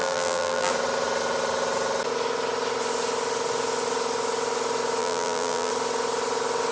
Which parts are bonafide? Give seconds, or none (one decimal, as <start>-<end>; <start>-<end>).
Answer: 0.7-5.0; 5.7-6.7